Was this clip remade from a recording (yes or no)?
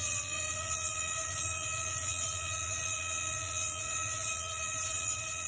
yes